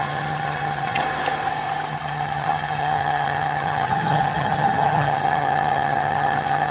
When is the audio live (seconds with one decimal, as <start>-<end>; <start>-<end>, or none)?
1.0-1.9